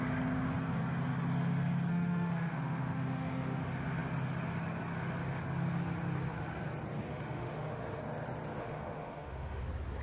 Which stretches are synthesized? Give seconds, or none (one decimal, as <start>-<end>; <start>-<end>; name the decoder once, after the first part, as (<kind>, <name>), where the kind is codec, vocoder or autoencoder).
1.9-3.6 (autoencoder, DAC-VAE); 7.1-8.0; 8.6-9.6